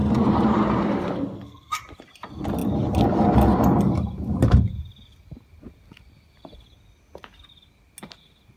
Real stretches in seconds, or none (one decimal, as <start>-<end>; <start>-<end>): 0.0-1.3; 1.8-8.6